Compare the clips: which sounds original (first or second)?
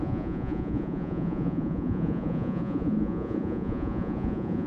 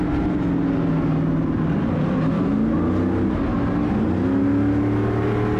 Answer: second